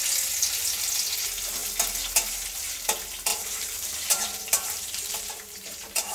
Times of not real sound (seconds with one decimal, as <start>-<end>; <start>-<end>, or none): 3.3-6.1